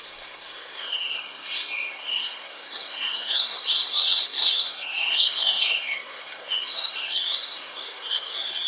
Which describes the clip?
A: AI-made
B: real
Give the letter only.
A